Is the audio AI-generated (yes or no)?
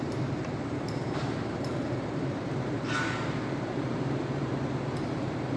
yes